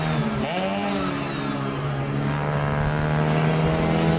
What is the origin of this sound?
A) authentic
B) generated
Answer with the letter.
A